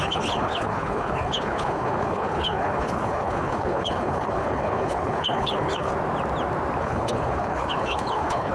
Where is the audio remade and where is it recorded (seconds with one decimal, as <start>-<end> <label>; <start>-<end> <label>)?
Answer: 0.0-5.9 remade; 5.9-6.8 recorded; 6.8-8.5 remade